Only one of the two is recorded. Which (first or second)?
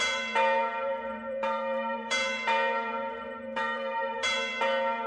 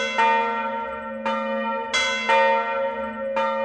second